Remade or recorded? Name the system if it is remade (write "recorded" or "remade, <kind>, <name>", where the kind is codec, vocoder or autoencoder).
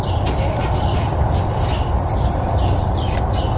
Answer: recorded